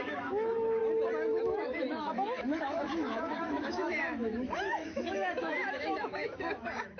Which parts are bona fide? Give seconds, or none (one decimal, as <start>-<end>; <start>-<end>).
0.8-1.4